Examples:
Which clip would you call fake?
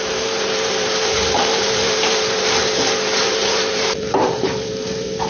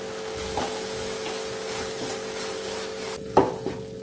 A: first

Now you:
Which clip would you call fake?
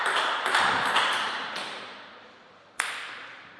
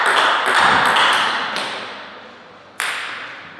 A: first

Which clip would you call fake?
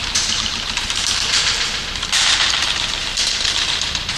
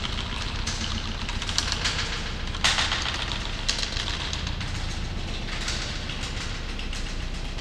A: first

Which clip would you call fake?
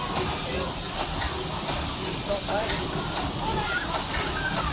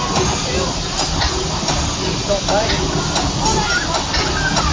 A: first